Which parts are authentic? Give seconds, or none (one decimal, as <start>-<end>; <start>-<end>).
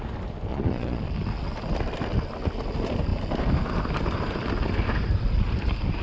0.0-0.5; 1.0-6.0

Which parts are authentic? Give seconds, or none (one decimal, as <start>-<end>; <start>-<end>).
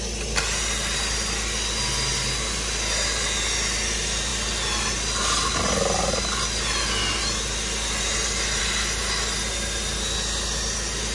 0.0-11.1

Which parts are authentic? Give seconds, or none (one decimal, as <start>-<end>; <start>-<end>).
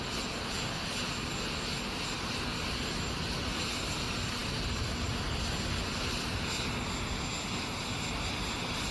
0.0-8.9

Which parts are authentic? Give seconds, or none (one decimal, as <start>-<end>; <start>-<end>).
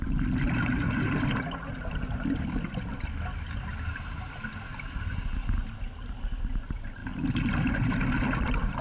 0.0-8.8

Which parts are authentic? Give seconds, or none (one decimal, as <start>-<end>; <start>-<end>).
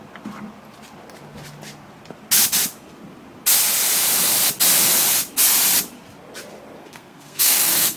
0.0-6.8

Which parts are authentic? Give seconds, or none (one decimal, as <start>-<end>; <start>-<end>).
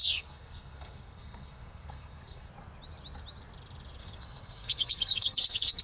2.5-4.0